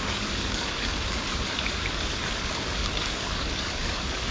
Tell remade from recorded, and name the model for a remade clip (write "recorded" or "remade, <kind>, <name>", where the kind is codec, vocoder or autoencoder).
remade, codec, DAC